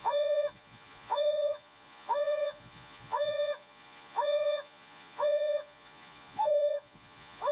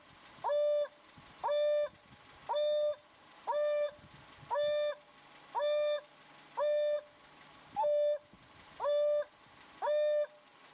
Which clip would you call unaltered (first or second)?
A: second